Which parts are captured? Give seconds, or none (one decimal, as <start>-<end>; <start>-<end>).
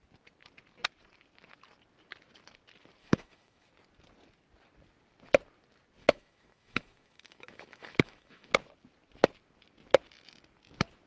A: 0.0-3.0; 3.7-6.0; 8.5-11.1